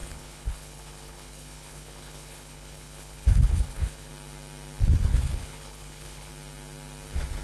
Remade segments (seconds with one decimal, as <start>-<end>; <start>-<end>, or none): 0.0-4.1; 5.1-6.3